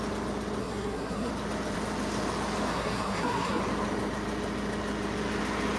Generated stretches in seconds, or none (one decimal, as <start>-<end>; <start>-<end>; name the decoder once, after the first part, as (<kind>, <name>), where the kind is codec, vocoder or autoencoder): 0.6-1.3 (codec, SNAC); 2.7-3.6